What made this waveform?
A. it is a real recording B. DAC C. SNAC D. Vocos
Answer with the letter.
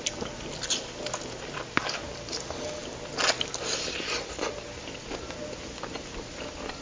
A